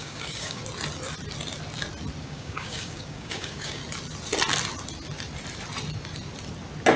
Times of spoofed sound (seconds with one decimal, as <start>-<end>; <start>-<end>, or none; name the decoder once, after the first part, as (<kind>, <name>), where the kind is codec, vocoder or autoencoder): 0.0-0.6 (codec, DAC); 2.2-3.8